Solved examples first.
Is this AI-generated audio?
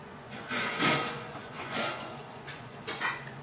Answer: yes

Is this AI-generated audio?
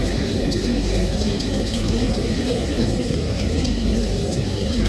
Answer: yes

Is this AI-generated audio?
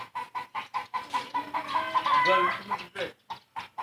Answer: no